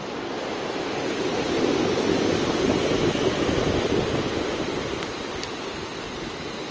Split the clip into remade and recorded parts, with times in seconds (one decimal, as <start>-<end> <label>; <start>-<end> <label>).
0.0-1.6 remade; 1.6-6.7 recorded